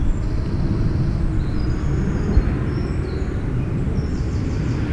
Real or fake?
real